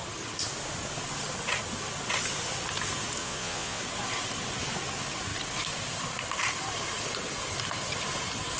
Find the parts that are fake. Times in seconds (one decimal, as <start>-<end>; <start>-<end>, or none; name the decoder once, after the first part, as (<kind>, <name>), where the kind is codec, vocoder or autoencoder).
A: 3.2-3.8 (vocoder, Vocos)